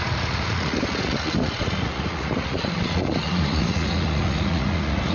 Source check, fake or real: fake